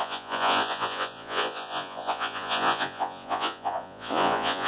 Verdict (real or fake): fake